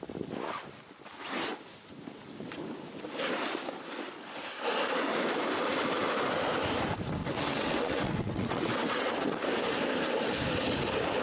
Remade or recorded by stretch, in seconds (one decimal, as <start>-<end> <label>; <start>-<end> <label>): 0.0-7.2 recorded; 7.2-9.1 remade; 9.1-11.2 recorded